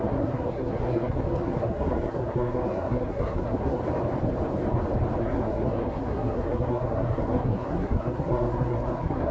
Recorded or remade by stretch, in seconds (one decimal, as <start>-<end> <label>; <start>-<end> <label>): 0.0-3.8 remade; 3.8-5.2 recorded; 5.2-9.3 remade